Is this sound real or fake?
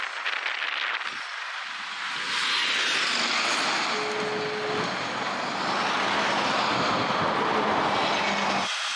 real